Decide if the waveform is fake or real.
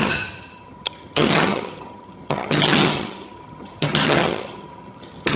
fake